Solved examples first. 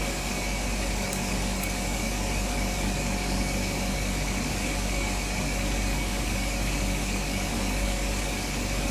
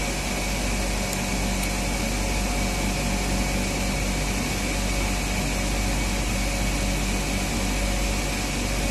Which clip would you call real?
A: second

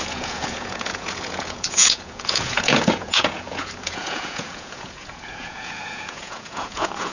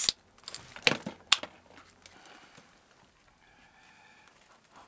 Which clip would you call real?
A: second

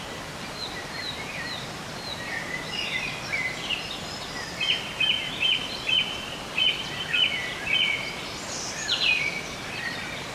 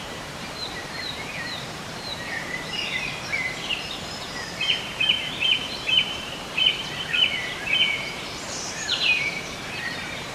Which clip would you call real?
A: first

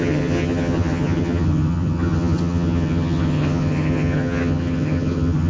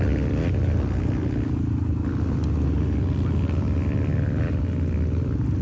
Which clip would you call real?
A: second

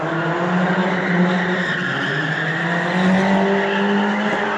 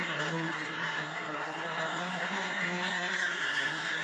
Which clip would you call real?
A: first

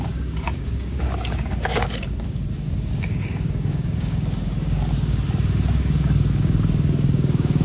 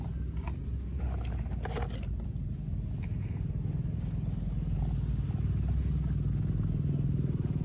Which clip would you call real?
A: second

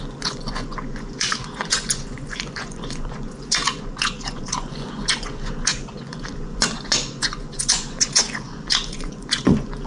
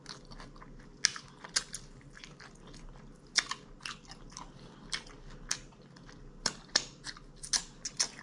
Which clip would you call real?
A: second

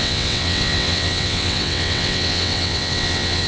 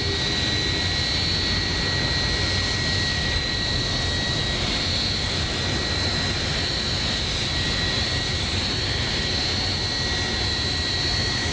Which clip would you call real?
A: second